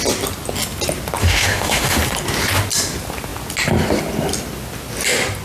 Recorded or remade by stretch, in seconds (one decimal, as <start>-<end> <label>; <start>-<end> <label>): 0.0-1.2 recorded; 1.2-2.0 remade; 2.0-5.4 recorded